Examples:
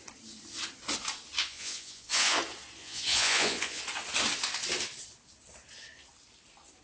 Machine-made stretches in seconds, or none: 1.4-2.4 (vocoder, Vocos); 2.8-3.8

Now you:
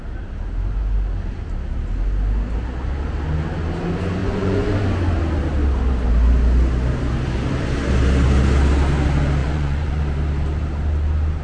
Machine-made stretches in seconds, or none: 4.2-4.7 (vocoder, Vocos); 9.4-10.0

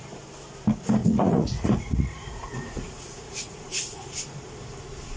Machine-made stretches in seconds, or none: 1.0-4.1 (vocoder, Vocos)